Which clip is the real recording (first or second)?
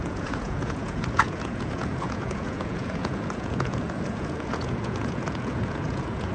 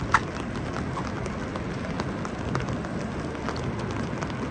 second